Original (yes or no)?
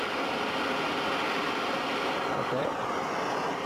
yes